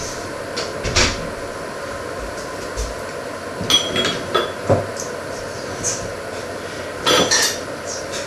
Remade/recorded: recorded